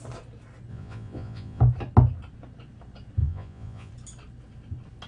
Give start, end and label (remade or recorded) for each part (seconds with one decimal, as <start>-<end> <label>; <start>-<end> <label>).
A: 0.0-0.7 recorded; 0.7-1.6 remade; 1.6-3.2 recorded; 3.2-3.9 remade; 3.9-5.1 recorded